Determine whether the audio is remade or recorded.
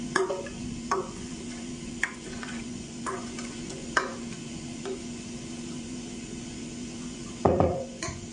remade